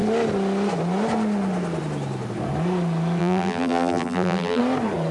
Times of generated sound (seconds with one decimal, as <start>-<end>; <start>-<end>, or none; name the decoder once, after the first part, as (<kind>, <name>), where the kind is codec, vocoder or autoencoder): 3.2-4.6 (vocoder, BigVGAN v2)